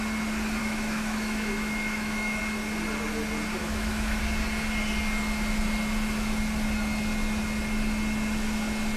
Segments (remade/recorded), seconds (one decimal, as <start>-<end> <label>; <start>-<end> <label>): 0.0-0.6 recorded; 0.6-2.4 remade; 2.4-3.6 recorded; 3.6-4.2 remade; 4.2-9.0 recorded